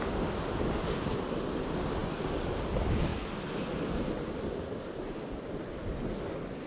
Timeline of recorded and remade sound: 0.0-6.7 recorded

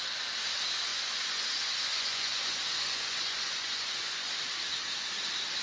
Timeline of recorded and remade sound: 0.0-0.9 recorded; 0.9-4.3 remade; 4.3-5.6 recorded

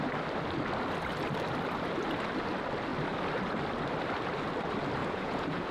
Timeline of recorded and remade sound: 0.0-5.0 recorded; 5.0-5.7 remade

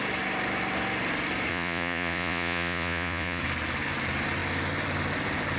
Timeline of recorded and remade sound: 0.0-1.5 recorded; 1.5-3.4 remade; 3.4-5.6 recorded

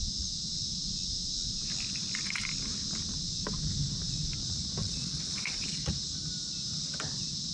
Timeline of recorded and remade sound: 0.0-4.8 recorded; 4.8-5.9 remade; 5.9-7.5 recorded